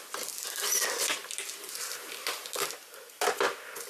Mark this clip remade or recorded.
recorded